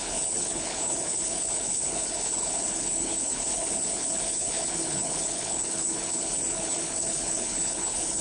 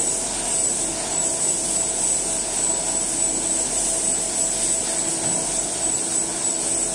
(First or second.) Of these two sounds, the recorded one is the second